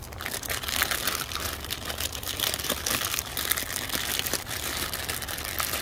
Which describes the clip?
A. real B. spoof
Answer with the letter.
A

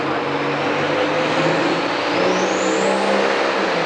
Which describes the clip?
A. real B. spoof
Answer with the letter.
A